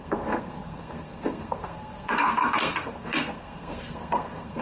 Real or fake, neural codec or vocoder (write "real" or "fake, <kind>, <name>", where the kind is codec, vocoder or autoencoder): fake, codec, SNAC